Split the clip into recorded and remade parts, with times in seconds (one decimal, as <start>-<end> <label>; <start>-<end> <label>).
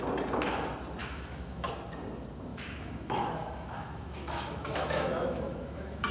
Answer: 0.0-1.0 recorded; 1.0-1.7 remade; 1.7-2.5 recorded; 2.5-6.1 remade